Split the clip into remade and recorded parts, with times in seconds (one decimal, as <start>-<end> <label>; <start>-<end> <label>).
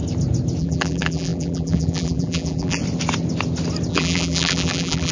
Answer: 0.0-0.6 recorded; 0.6-2.8 remade; 2.8-3.9 recorded; 3.9-5.1 remade